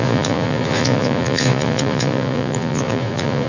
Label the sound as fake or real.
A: fake